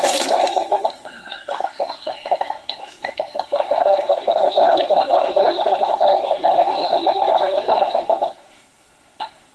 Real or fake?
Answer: fake